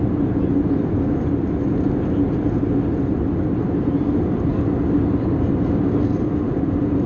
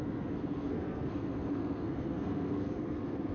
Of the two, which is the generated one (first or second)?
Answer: second